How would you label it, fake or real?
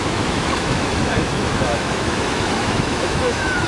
fake